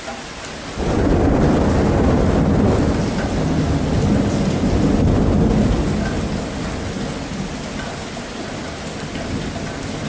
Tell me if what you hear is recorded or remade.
recorded